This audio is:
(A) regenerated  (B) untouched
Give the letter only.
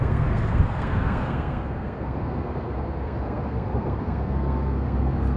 A